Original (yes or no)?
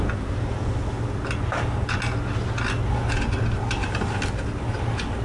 yes